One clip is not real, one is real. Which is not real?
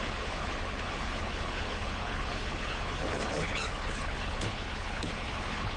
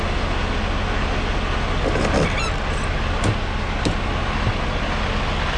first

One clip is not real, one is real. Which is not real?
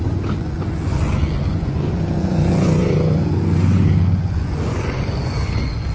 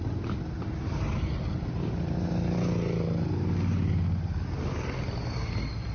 first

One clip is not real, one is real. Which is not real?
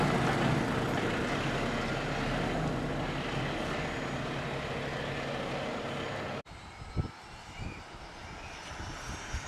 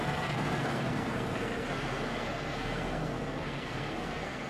second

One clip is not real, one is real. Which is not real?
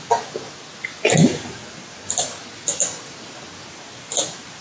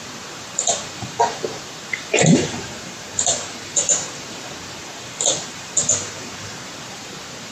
second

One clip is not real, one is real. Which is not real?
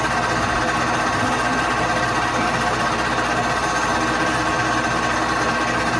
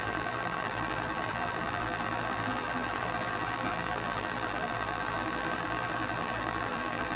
second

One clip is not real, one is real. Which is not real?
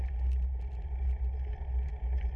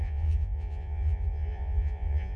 second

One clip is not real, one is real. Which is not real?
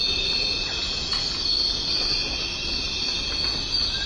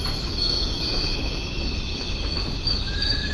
second